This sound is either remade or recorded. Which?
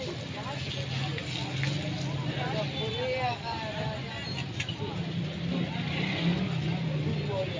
recorded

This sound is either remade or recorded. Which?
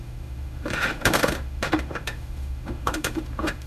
remade